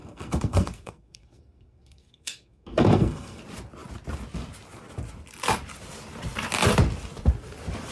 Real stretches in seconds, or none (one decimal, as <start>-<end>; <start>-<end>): 3.4-7.9